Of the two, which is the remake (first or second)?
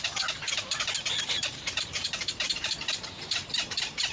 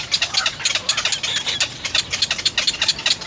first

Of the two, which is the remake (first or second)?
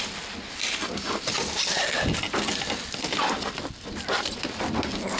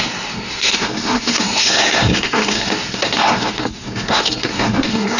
second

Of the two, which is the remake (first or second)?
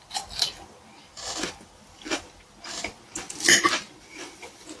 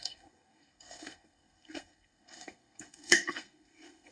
second